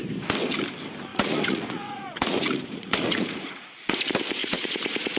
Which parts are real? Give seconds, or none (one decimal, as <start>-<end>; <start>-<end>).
0.0-1.1; 4.0-4.4